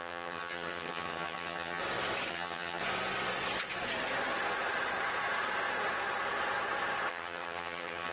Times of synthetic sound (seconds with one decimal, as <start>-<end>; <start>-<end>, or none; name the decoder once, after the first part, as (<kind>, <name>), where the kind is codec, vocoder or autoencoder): 0.0-1.8 (vocoder, HiFi-GAN); 2.3-2.8; 7.1-8.1